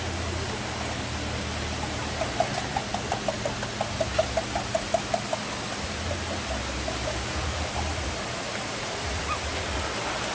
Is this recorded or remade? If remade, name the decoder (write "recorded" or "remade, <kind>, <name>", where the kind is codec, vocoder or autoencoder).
recorded